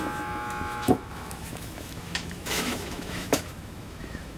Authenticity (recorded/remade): remade